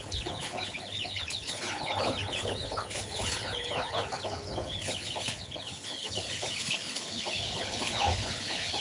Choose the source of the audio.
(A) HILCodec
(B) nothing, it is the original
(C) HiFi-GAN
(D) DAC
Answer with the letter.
A